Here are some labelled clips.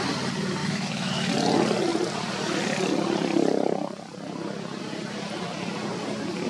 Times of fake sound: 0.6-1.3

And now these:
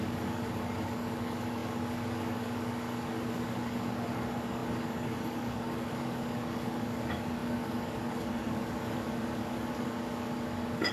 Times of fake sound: 0.0-10.9

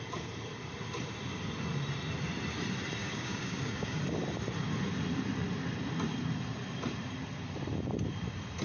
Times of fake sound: 3.0-4.0

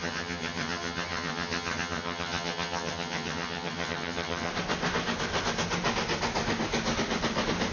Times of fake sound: 0.0-4.5

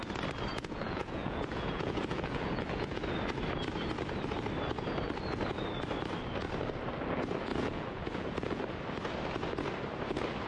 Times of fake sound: 0.5-3.0; 7.5-8.6

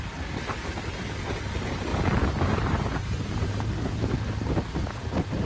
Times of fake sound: 1.9-5.5

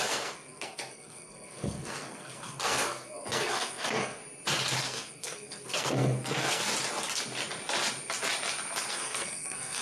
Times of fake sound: 0.0-4.2; 4.8-6.7; 8.9-9.8

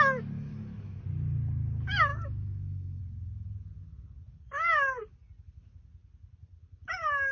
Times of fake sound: 0.5-1.0; 2.1-3.0